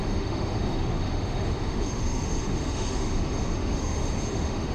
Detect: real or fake fake